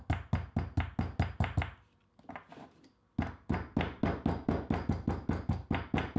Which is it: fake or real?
real